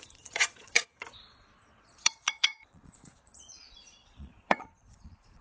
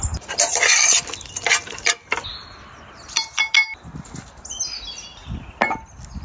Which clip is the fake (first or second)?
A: first